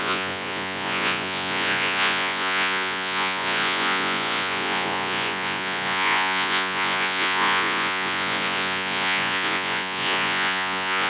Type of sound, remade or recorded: remade